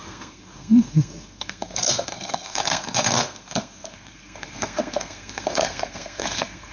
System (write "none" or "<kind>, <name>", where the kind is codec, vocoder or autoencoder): codec, SNAC